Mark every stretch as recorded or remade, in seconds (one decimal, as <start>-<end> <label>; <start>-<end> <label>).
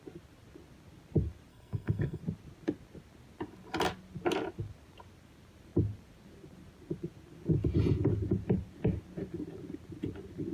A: 0.0-1.5 recorded; 1.5-2.2 remade; 2.2-10.5 recorded